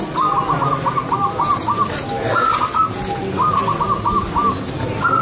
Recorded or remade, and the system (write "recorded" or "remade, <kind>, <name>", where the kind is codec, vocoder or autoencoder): recorded